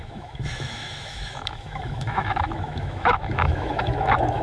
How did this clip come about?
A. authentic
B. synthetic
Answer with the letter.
B